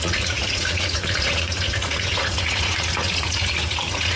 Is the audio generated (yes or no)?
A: yes